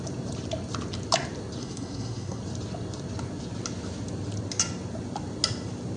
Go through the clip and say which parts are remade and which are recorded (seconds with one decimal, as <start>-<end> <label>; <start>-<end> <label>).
0.0-1.6 recorded; 1.6-2.4 remade; 2.4-6.0 recorded